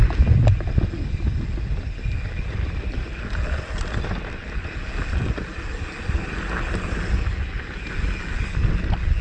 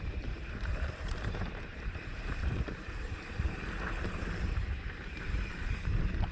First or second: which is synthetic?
second